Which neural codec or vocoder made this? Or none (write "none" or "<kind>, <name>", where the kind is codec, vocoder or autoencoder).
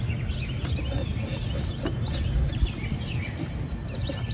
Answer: none